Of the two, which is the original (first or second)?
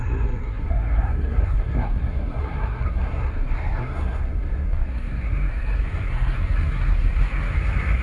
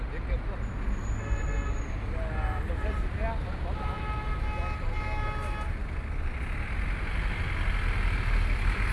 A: second